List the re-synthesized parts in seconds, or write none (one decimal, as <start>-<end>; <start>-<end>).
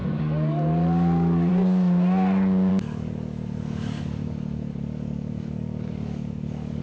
0.0-1.5; 2.7-6.8